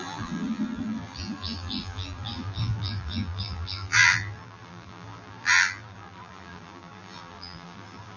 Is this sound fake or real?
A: fake